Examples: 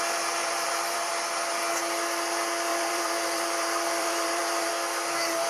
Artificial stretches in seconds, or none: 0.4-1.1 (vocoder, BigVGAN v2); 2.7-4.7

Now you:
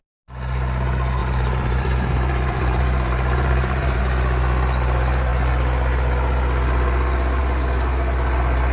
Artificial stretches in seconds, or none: 1.2-4.0 (vocoder, BigVGAN v2)

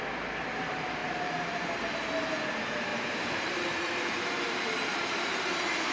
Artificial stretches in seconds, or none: 1.0-1.7 (vocoder, BigVGAN v2); 2.9-5.2

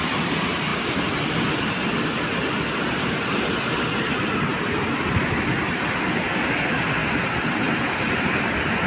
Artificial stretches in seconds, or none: none

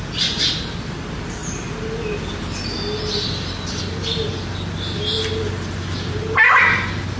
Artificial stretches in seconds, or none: none

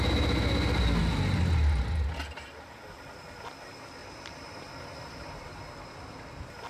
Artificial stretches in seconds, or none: 1.0-1.8 (vocoder, BigVGAN v2); 4.0-5.3